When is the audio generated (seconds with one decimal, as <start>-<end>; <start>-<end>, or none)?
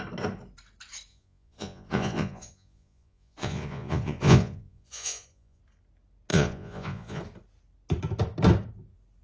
1.1-5.6; 6.3-7.2